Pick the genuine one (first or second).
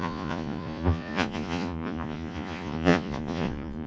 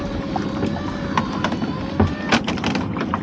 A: second